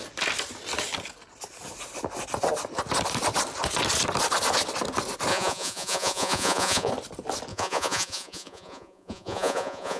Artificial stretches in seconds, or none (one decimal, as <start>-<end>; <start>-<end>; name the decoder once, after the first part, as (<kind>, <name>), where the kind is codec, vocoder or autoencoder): 5.3-6.9 (vocoder, Vocos); 7.5-10.0